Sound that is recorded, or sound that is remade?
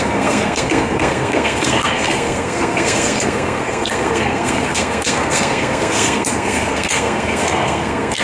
remade